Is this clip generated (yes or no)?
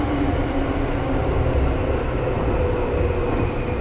no